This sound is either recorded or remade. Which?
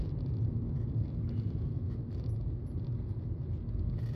recorded